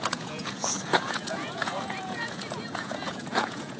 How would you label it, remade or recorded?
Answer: remade